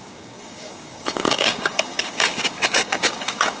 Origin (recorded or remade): remade